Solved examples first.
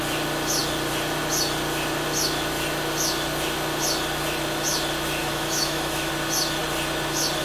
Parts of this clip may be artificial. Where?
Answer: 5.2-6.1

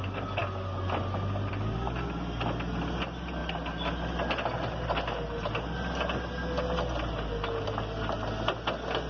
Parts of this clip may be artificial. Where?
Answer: none

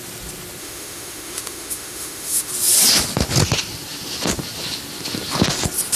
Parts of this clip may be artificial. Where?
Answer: 0.6-2.5